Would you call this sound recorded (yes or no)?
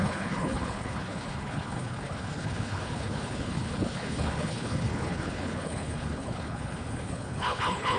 no